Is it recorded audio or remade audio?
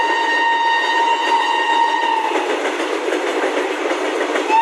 recorded